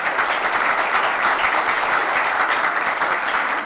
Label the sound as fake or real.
real